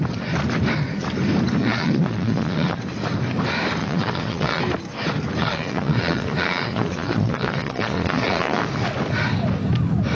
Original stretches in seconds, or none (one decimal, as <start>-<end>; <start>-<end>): 0.0-1.6; 2.8-3.8; 4.6-5.4; 8.7-10.1